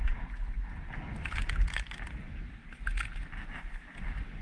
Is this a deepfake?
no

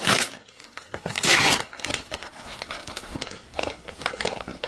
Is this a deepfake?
yes